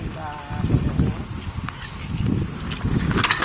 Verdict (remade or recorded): recorded